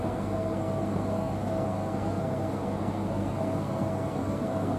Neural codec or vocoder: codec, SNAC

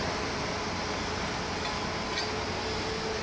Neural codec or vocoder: none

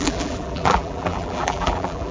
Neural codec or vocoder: vocoder, BigVGAN v2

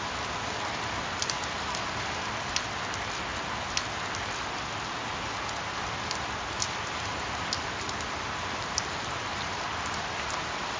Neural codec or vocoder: none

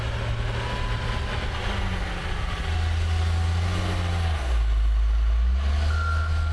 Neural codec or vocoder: none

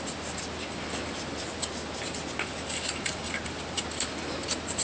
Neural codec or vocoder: none